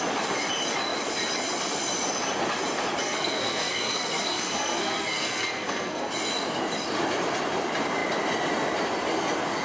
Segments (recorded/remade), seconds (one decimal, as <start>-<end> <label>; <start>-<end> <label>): 0.0-3.0 recorded; 3.0-6.1 remade; 6.1-9.6 recorded